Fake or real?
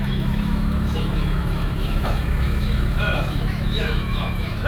fake